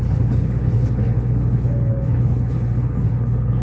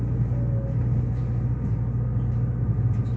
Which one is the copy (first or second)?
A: first